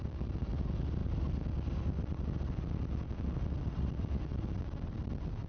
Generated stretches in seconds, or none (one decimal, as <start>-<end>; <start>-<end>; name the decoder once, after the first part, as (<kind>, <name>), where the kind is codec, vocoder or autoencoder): none